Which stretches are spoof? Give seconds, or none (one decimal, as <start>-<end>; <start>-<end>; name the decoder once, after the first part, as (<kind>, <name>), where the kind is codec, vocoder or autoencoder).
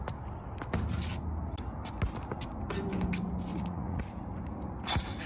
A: 3.5-4.0 (vocoder, Vocos)